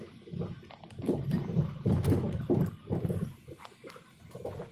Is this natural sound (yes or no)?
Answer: yes